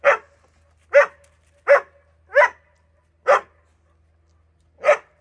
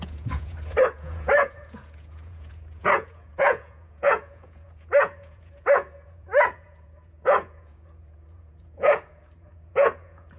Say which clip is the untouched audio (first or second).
first